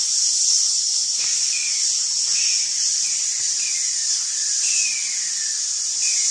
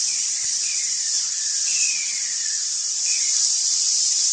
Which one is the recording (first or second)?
first